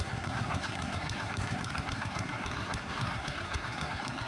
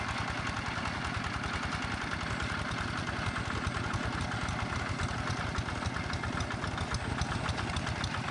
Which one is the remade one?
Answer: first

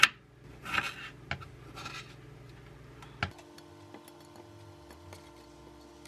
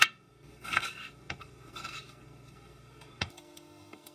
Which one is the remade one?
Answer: second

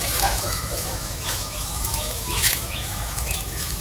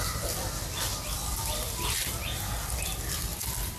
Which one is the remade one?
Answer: first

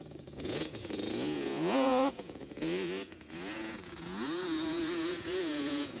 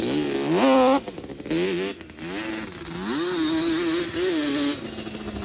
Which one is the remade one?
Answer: first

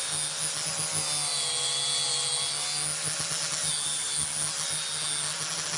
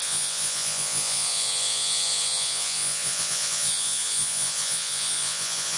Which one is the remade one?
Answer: second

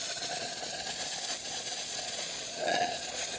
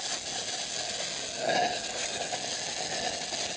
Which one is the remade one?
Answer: first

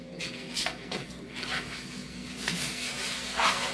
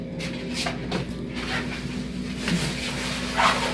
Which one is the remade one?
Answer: first